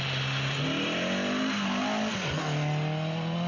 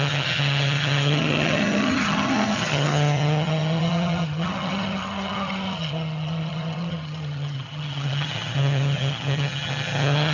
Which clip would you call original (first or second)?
first